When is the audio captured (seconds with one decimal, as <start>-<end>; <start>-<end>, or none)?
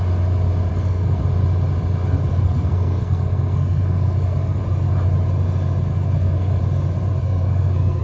0.0-0.7; 1.2-2.3; 4.6-5.9; 6.6-7.2